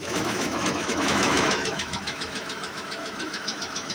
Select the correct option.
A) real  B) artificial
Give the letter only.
B